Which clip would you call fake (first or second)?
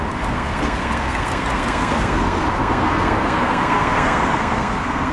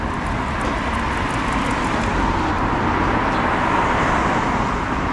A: first